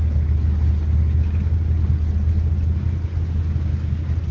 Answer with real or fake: real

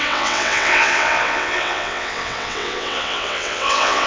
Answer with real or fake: fake